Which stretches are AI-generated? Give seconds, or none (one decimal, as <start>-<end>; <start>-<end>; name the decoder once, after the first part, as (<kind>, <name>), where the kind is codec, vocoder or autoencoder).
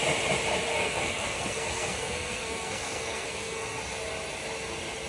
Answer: 0.7-3.8 (codec, SNAC)